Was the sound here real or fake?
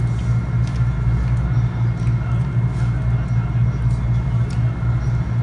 real